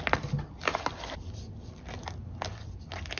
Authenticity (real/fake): real